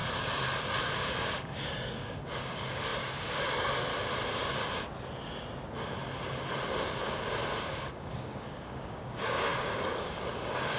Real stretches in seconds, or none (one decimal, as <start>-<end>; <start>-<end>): 0.0-0.8; 3.9-7.5